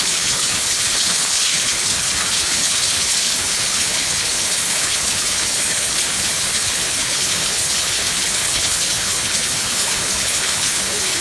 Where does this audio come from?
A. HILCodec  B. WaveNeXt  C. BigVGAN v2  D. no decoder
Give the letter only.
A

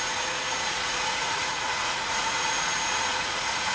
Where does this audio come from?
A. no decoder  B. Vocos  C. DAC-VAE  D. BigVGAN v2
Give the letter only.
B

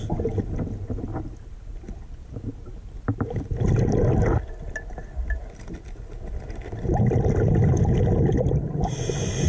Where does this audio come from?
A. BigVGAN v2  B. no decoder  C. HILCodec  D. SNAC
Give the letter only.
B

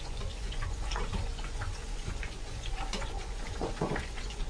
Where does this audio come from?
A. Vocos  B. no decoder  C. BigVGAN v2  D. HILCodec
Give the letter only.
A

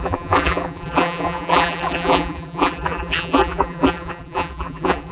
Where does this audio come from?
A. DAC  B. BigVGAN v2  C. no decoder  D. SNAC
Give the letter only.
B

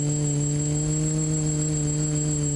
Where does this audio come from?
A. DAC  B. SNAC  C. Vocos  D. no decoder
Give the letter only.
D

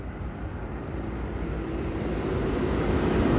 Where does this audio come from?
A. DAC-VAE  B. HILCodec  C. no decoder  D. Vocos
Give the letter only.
C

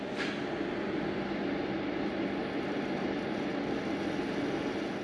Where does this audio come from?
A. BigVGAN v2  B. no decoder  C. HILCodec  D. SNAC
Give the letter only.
B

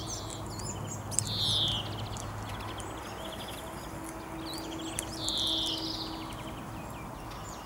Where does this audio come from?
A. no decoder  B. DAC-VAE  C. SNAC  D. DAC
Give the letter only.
A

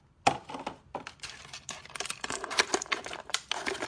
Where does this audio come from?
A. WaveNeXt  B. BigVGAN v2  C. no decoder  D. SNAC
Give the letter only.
C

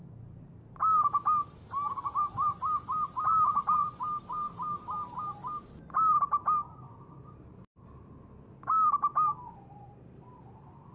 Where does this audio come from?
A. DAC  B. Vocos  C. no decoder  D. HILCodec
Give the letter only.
C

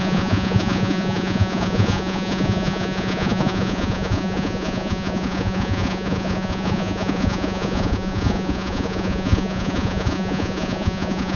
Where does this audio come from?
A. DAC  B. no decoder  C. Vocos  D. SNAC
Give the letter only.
C